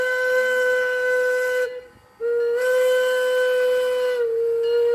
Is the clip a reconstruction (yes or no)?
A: no